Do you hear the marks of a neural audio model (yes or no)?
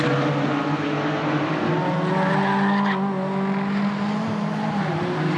no